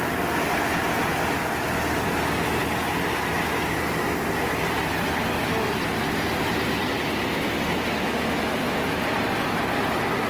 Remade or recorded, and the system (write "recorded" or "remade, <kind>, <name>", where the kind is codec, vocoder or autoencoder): recorded